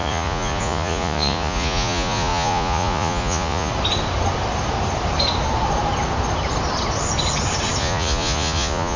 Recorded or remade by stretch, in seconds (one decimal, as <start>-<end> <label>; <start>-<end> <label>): 0.0-3.7 remade; 3.7-7.8 recorded; 7.8-9.0 remade